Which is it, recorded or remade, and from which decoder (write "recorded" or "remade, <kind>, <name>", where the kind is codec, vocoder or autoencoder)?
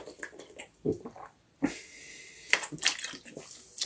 recorded